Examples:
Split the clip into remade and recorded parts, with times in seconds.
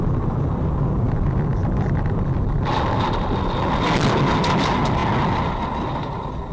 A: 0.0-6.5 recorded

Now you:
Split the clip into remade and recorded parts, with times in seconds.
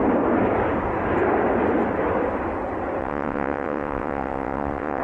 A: 0.0-3.0 recorded; 3.0-5.0 remade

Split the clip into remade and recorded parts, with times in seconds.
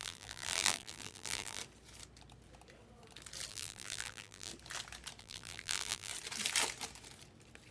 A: 0.0-1.6 remade; 1.6-3.5 recorded; 3.5-4.5 remade; 4.5-5.2 recorded; 5.2-6.1 remade; 6.1-7.7 recorded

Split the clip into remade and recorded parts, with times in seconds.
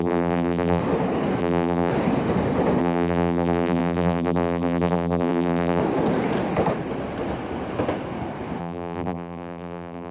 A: 0.0-0.8 remade; 0.8-1.4 recorded; 1.4-1.9 remade; 1.9-2.8 recorded; 2.8-5.8 remade; 5.8-8.6 recorded; 8.6-10.1 remade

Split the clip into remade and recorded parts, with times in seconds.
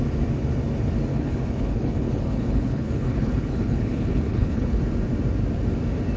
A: 0.0-1.1 recorded; 1.1-4.8 remade; 4.8-6.2 recorded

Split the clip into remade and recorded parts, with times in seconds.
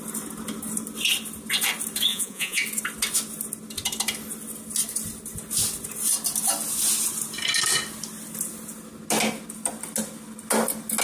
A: 0.0-2.1 recorded; 2.1-2.6 remade; 2.6-11.0 recorded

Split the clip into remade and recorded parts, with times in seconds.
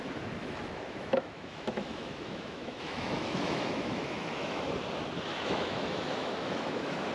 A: 0.0-0.4 recorded; 0.4-4.7 remade; 4.7-5.3 recorded; 5.3-7.1 remade